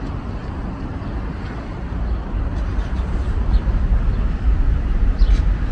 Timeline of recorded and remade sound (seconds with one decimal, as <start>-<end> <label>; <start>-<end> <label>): 0.0-5.7 recorded